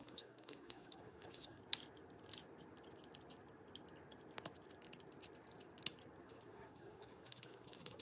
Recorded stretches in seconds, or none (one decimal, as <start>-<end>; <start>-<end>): 1.6-6.2